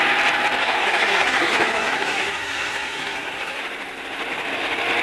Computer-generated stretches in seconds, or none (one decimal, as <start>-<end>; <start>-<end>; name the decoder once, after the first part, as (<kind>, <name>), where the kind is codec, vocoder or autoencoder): 0.6-3.6 (codec, SNAC)